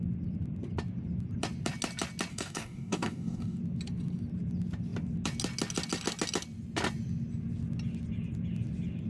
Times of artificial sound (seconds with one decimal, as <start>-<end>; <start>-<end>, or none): 2.3-3.6